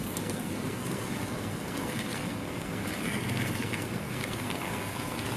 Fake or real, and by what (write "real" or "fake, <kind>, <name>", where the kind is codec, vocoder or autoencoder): fake, codec, SNAC